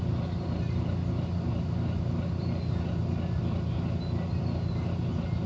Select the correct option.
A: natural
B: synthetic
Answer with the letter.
A